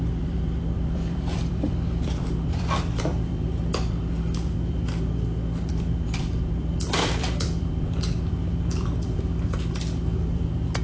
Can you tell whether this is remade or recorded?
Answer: remade